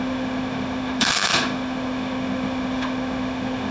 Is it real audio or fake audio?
fake